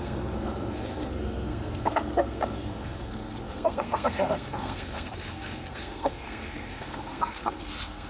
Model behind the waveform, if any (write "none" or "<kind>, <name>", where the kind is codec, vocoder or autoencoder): codec, SNAC